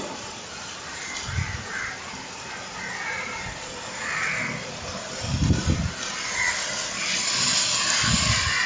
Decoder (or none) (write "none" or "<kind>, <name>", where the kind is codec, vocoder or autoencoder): none